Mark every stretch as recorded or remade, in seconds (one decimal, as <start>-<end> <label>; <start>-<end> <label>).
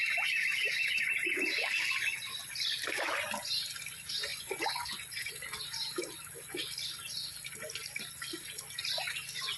0.0-4.3 recorded; 4.3-5.3 remade; 5.3-9.6 recorded